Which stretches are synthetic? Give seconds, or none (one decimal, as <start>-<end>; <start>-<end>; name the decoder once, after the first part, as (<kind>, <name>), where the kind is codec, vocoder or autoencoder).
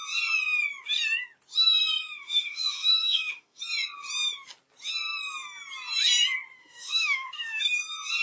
2.0-3.6 (autoencoder, DAC-VAE); 6.6-7.6